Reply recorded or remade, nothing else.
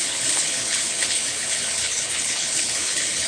remade